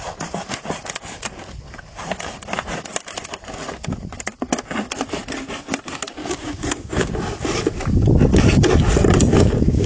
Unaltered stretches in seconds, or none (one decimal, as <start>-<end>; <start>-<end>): 0.0-6.2; 7.1-9.3